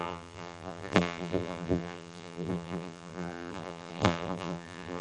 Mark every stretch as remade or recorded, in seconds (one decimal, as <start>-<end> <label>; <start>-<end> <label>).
0.0-5.0 remade